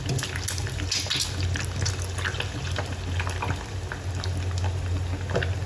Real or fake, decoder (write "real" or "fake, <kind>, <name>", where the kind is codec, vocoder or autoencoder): real